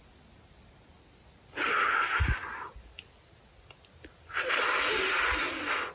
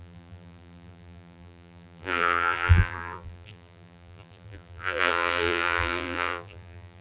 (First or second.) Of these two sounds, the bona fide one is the first